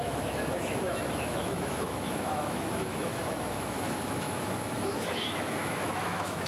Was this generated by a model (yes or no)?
yes